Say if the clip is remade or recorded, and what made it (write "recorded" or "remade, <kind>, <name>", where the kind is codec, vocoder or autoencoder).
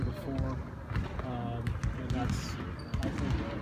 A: recorded